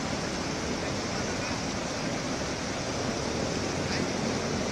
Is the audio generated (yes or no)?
no